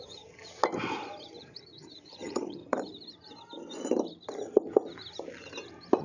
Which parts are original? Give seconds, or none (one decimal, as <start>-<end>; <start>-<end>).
0.4-1.4; 2.6-6.0